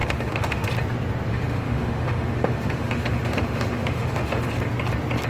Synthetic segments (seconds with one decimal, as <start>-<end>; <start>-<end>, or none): 0.0-0.7; 1.3-4.5